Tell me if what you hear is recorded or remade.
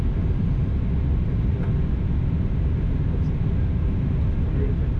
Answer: recorded